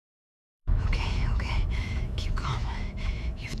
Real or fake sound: fake